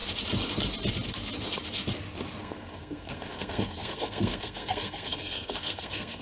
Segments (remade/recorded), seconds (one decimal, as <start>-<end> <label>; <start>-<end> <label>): 0.0-2.4 recorded; 2.4-6.2 remade